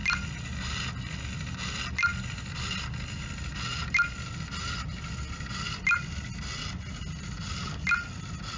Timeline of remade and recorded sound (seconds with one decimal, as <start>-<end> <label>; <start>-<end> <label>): 0.0-8.6 recorded